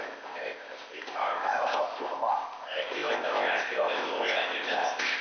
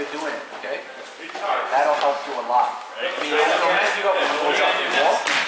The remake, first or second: first